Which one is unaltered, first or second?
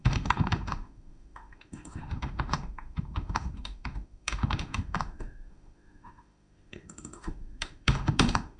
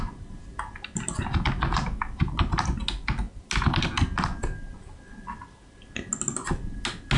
second